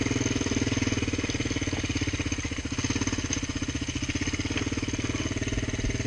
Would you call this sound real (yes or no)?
yes